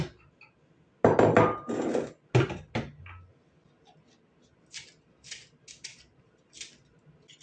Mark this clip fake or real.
real